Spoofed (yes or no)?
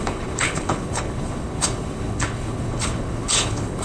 yes